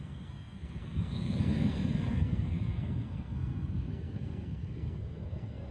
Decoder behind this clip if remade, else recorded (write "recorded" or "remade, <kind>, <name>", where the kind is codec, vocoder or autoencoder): remade, codec, SNAC